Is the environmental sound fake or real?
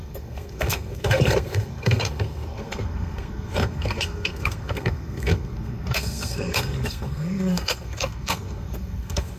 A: fake